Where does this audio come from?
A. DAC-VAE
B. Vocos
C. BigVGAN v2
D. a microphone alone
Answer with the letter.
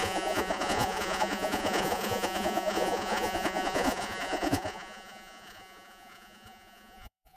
B